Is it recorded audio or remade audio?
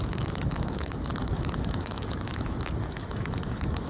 remade